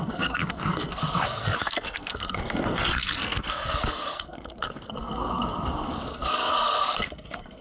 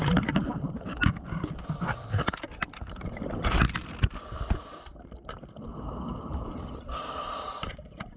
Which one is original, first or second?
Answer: second